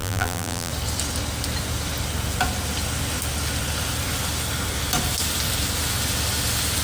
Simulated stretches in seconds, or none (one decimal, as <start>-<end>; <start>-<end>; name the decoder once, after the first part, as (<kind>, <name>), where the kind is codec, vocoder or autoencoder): 0.0-0.7 (vocoder, BigVGAN v2)